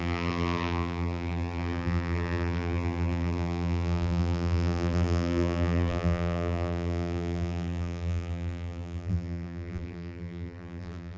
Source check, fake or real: fake